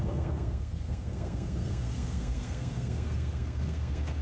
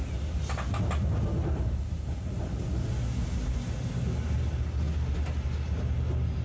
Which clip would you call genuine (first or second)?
second